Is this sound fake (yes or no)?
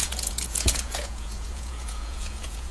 yes